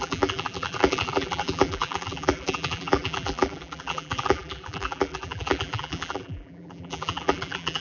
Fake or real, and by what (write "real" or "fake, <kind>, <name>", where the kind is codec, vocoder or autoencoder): fake, vocoder, BigVGAN v2